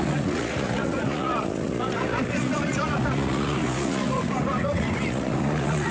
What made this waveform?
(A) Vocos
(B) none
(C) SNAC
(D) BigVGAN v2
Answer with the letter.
A